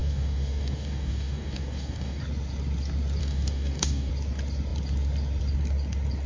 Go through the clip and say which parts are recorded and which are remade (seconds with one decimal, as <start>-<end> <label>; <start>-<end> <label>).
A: 0.0-2.2 remade; 2.2-3.2 recorded; 3.2-4.1 remade; 4.1-6.3 recorded